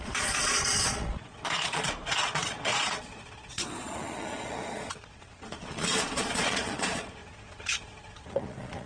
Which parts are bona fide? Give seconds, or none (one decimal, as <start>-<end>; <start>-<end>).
none